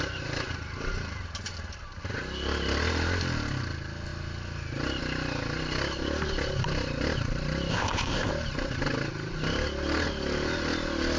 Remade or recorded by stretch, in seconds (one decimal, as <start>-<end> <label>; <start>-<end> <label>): 0.0-7.7 recorded; 7.7-8.3 remade; 8.3-11.2 recorded